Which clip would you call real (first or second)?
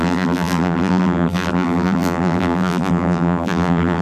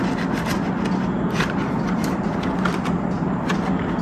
second